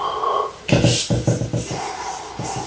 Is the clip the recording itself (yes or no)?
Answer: yes